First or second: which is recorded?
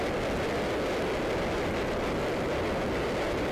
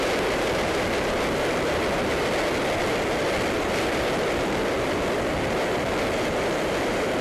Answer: first